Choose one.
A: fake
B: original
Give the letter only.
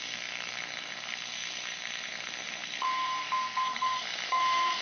A